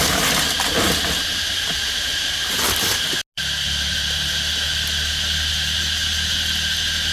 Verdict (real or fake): real